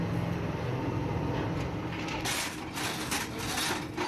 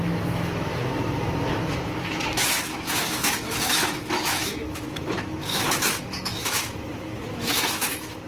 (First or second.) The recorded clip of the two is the first